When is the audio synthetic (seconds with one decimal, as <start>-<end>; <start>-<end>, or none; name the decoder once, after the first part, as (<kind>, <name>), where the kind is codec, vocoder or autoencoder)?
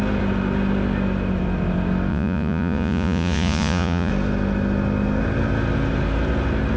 2.1-4.1 (vocoder, Vocos)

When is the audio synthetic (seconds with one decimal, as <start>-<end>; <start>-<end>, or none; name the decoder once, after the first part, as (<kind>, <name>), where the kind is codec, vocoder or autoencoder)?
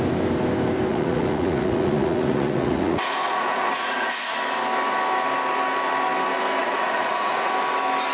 0.9-4.3 (vocoder, Vocos); 6.6-7.5